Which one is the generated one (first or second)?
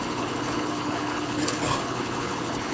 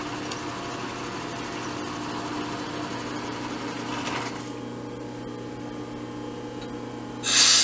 first